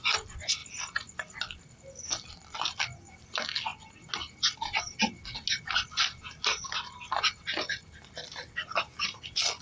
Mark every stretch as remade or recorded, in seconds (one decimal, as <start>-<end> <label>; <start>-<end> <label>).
0.0-6.5 recorded; 6.5-7.2 remade; 7.2-9.6 recorded